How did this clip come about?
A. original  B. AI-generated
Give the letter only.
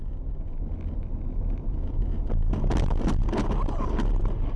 A